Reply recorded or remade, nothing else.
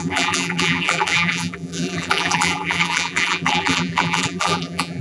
remade